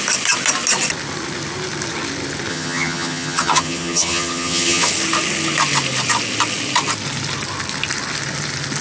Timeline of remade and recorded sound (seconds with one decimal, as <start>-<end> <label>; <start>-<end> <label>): 0.0-2.5 recorded; 2.5-4.9 remade; 4.9-8.8 recorded